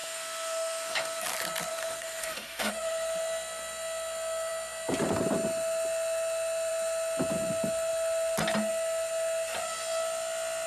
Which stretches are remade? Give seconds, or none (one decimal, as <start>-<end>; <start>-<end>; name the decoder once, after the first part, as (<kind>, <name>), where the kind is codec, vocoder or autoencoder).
0.0-1.2 (autoencoder, DAC-VAE); 1.7-2.7